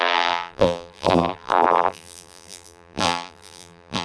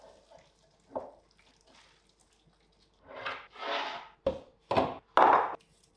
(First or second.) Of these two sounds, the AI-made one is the first